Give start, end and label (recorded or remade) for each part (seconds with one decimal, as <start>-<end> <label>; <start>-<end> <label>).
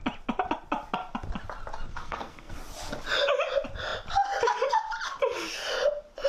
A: 0.0-1.9 recorded; 1.9-2.6 remade; 2.6-6.3 recorded